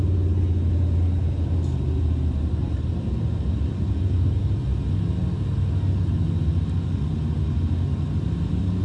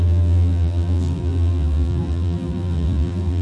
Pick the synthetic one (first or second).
second